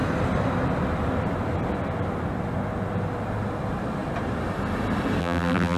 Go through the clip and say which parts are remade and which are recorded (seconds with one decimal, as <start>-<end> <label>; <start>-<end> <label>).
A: 0.0-5.2 recorded; 5.2-5.8 remade